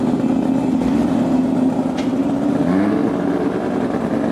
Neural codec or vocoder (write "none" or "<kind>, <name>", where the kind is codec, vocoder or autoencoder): none